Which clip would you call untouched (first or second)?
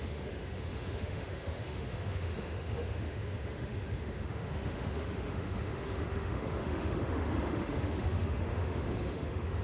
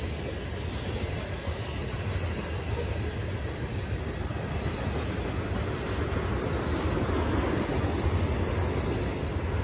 second